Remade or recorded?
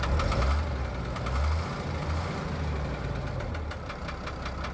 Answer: recorded